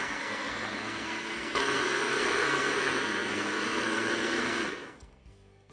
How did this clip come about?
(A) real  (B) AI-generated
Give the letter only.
B